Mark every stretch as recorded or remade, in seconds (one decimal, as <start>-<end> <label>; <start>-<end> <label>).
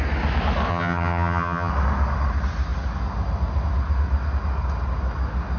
0.0-0.7 recorded; 0.7-1.7 remade; 1.7-5.6 recorded